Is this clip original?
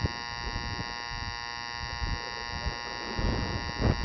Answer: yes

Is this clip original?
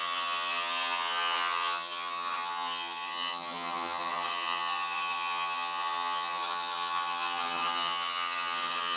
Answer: no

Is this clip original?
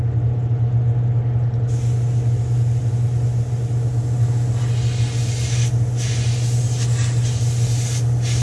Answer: yes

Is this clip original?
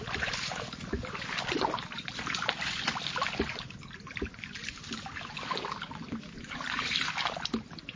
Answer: yes